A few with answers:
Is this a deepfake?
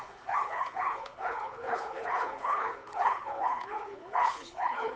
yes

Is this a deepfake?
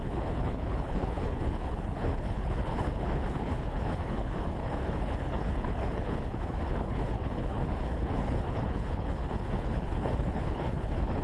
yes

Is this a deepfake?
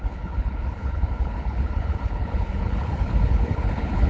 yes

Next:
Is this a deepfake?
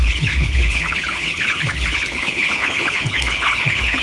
yes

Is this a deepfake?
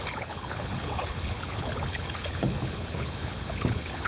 yes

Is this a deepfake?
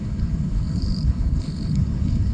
yes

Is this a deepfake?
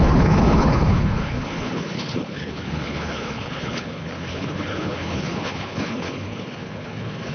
yes